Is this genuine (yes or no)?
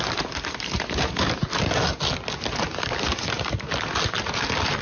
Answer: yes